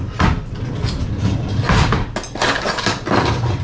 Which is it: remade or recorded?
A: recorded